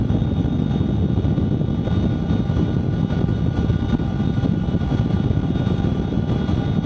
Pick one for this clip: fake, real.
real